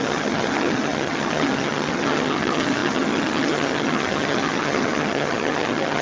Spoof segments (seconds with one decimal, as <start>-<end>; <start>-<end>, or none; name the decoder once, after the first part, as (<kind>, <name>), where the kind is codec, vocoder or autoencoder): 0.0-6.0 (vocoder, HiFi-GAN)